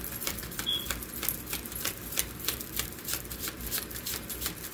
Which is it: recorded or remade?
remade